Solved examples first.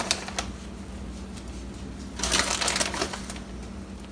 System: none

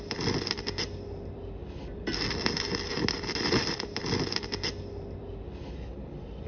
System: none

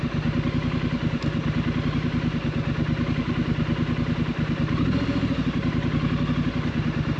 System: none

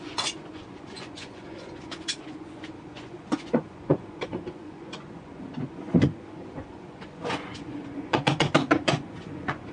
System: vocoder, Vocos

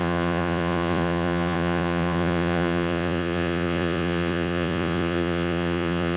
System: vocoder, Vocos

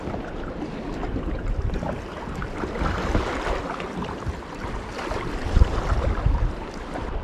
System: none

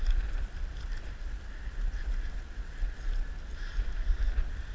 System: none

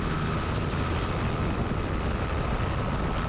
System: none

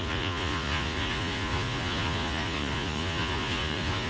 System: vocoder, Vocos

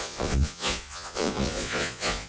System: vocoder, Vocos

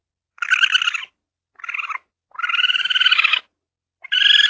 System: none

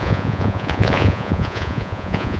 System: vocoder, Vocos